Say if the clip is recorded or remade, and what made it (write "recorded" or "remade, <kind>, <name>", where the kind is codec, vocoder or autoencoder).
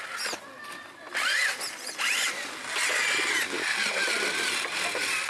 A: recorded